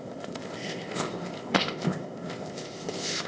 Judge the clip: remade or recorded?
remade